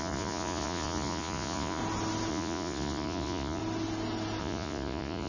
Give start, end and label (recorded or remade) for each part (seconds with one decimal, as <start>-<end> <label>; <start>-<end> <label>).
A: 0.0-1.8 remade; 1.8-2.3 recorded; 2.3-3.6 remade; 3.6-4.4 recorded; 4.4-5.3 remade